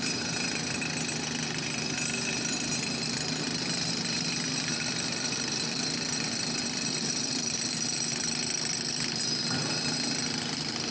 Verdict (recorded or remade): recorded